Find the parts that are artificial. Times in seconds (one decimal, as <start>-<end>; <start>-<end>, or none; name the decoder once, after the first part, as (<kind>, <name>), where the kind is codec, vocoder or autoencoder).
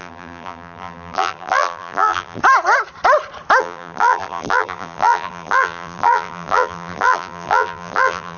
0.0-2.4 (vocoder, BigVGAN v2); 3.6-8.4